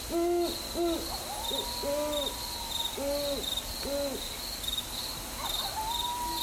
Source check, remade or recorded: recorded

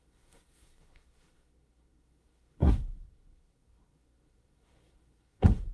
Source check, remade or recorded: remade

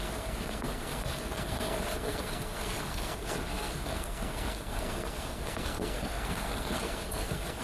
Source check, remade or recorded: remade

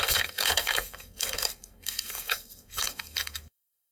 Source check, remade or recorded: remade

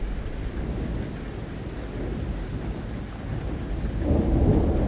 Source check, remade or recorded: recorded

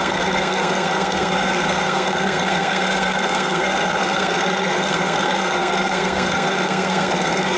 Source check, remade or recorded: remade